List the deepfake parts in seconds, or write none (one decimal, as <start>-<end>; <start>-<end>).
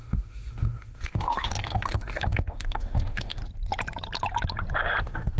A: 0.0-3.4; 5.0-5.4